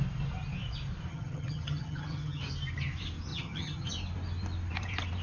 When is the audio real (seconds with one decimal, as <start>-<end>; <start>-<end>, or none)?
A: 0.0-1.1; 2.4-3.3; 3.9-5.2